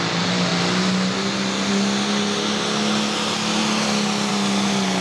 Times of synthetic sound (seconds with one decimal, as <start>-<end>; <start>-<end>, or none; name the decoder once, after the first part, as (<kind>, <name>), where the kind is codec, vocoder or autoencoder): none